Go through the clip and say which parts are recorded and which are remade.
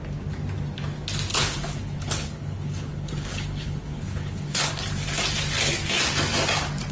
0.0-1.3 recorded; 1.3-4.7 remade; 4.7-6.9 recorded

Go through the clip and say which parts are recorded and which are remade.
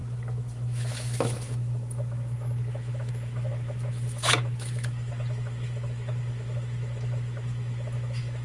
0.0-8.4 remade